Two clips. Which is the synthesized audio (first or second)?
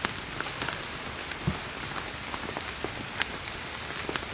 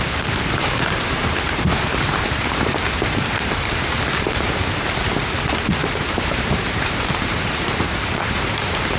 second